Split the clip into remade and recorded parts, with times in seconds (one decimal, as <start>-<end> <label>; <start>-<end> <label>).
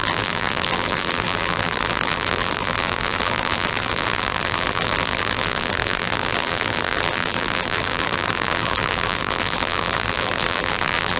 0.0-11.2 remade